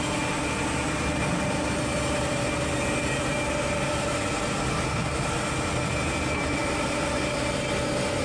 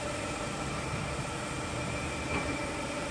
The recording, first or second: first